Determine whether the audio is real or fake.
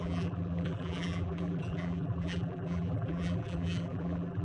fake